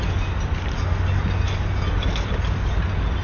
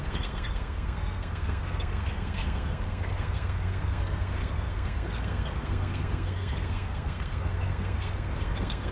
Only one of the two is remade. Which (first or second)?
second